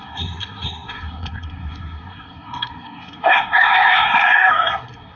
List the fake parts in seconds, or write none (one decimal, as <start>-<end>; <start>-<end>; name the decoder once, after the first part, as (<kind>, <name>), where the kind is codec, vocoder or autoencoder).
0.0-5.2 (codec, SNAC)

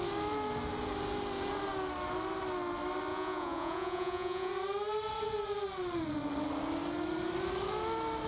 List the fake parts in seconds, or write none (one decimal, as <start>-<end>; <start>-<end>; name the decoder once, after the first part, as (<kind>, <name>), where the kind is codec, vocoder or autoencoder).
3.1-4.5 (vocoder, Vocos)

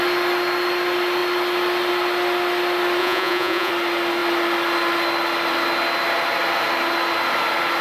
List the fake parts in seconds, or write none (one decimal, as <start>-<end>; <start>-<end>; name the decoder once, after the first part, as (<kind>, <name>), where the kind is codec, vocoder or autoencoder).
3.0-3.7 (vocoder, Vocos)